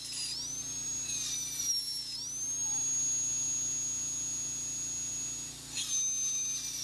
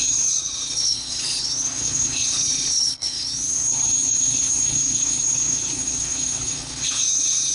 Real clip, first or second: first